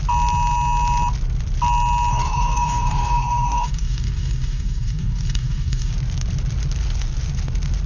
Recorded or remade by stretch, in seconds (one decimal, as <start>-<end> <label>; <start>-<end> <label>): 0.0-2.1 recorded; 2.1-5.9 remade; 5.9-7.9 recorded